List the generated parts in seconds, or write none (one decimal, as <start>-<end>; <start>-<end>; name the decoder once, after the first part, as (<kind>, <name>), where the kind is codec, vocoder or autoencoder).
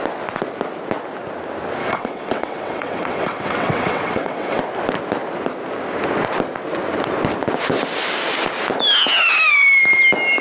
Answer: 1.8-4.6 (vocoder, WaveNeXt)